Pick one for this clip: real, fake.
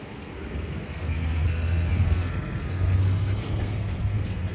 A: fake